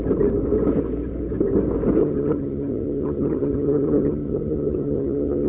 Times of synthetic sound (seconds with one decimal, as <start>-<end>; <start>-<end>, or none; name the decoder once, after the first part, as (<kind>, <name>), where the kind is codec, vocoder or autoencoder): 2.0-5.5 (vocoder, HiFi-GAN)

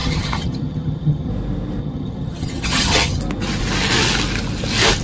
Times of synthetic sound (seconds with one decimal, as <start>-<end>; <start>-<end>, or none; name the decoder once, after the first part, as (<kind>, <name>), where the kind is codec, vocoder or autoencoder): 0.0-1.3 (vocoder, HiFi-GAN); 1.8-3.2

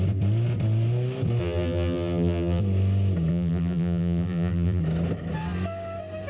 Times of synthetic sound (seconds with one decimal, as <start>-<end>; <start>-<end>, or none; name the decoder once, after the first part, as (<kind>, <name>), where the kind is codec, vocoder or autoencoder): 1.4-2.6 (vocoder, BigVGAN v2); 3.3-4.8